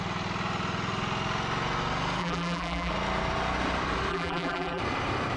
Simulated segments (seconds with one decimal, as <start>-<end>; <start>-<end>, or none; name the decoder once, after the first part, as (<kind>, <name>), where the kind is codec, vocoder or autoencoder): 2.2-2.9 (vocoder, BigVGAN v2); 4.1-4.8